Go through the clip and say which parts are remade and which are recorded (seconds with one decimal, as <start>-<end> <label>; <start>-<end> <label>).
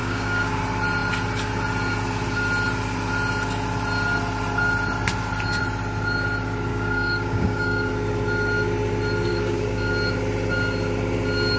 0.0-0.6 remade; 0.6-6.7 recorded; 6.7-7.9 remade; 7.9-9.3 recorded; 9.3-9.9 remade; 9.9-11.6 recorded